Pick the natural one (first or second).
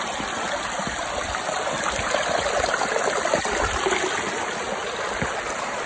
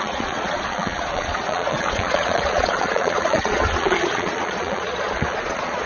first